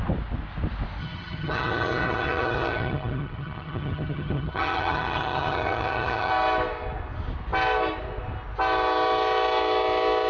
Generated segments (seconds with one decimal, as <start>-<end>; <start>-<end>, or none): 1.0-6.3